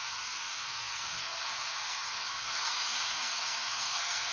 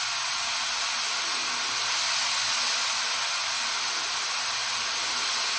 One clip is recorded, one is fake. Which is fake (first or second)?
first